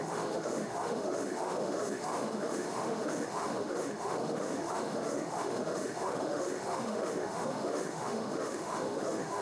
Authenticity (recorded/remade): remade